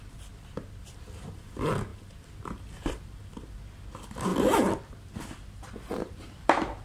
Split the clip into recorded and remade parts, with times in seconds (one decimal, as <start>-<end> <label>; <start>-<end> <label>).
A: 0.0-4.3 remade; 4.3-6.2 recorded; 6.2-6.8 remade